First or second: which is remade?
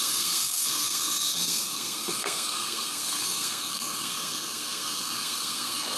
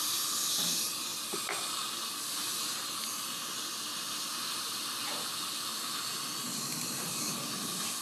first